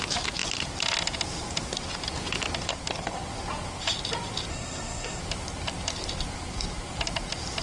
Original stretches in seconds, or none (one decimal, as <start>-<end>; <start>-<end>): 0.0-4.5; 5.2-7.6